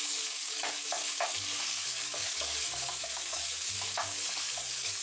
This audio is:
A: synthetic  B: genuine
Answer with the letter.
A